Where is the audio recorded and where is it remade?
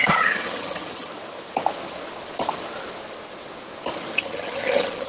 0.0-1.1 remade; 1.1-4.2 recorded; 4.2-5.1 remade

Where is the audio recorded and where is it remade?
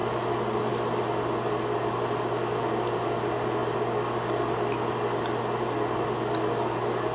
0.0-7.1 recorded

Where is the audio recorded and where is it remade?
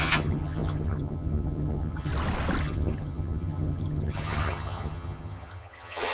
0.0-2.1 remade; 2.1-2.6 recorded; 2.6-6.1 remade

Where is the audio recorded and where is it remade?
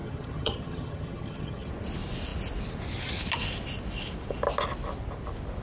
0.0-1.7 remade; 1.7-5.6 recorded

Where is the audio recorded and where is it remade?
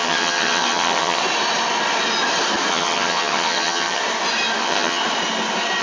0.0-1.2 remade; 1.2-2.7 recorded; 2.7-4.0 remade; 4.0-4.6 recorded; 4.6-5.0 remade; 5.0-5.8 recorded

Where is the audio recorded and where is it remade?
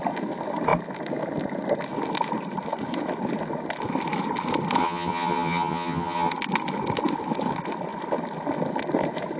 0.0-4.8 recorded; 4.8-6.3 remade; 6.3-9.4 recorded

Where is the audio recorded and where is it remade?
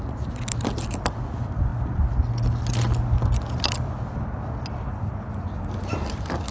0.0-6.5 recorded